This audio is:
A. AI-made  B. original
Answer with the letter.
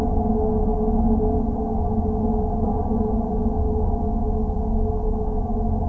B